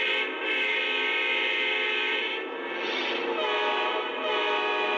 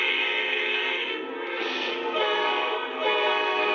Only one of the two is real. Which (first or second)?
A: first